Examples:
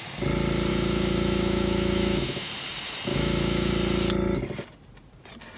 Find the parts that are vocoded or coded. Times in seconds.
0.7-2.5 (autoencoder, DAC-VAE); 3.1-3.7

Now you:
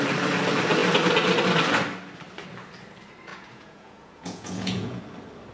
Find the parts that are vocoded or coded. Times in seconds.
3.3-5.0 (vocoder, Vocos)

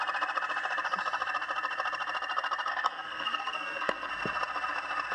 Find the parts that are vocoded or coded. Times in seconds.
2.7-4.1 (codec, SNAC)

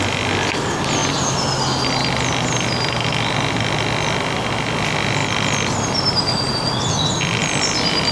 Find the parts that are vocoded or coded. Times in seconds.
none

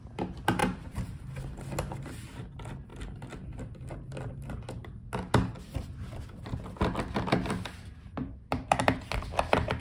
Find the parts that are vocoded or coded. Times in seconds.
0.6-1.3 (vocoder, BigVGAN v2); 8.2-9.0

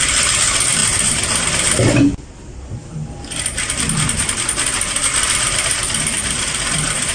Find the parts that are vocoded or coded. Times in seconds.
none